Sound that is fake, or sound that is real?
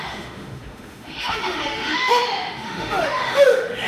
fake